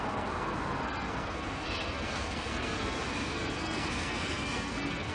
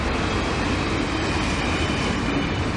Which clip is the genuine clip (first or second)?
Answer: second